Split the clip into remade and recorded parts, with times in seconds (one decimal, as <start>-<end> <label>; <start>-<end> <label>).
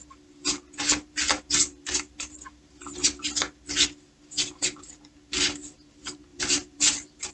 0.0-6.3 recorded; 6.3-7.3 remade